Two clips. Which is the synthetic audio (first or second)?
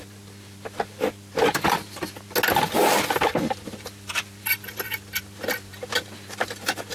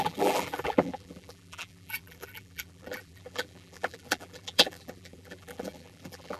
second